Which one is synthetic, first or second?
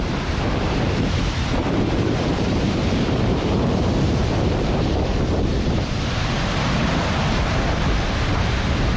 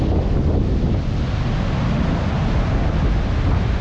first